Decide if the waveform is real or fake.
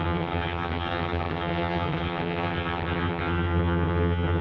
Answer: fake